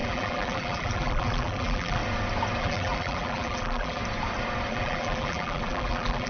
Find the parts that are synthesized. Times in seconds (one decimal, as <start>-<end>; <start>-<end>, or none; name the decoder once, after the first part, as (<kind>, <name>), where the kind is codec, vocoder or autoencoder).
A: 0.0-2.0 (vocoder, BigVGAN v2); 2.6-4.0; 4.7-6.3